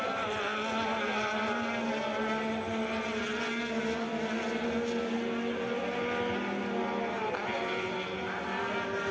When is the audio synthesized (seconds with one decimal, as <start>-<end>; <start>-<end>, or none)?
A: none